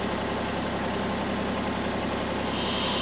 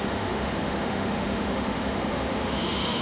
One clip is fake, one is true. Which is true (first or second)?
first